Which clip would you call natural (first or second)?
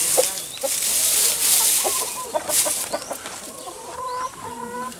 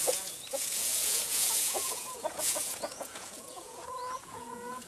first